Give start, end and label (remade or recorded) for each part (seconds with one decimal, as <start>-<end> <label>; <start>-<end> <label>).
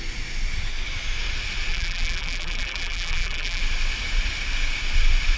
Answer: 0.0-1.7 recorded; 1.7-3.6 remade; 3.6-5.4 recorded